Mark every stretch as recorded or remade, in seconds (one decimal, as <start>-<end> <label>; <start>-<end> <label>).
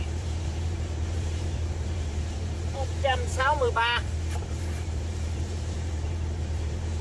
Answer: 0.0-7.0 remade